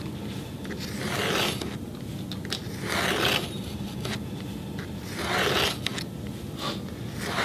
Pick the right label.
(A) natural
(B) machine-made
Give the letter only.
A